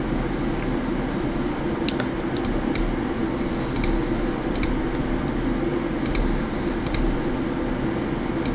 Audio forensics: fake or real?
real